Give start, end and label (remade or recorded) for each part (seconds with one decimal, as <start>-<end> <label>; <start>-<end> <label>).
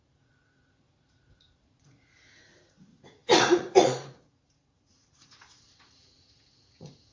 0.0-7.1 remade